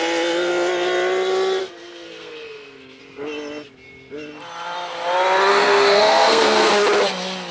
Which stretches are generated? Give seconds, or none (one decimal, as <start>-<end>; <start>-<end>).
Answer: 1.6-3.0; 5.5-6.7